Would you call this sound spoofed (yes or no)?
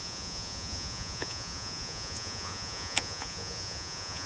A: yes